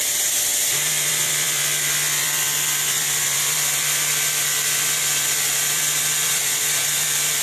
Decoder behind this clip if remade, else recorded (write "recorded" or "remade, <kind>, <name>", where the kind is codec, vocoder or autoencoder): remade, vocoder, BigVGAN v2